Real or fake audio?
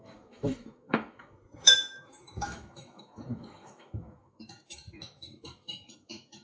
fake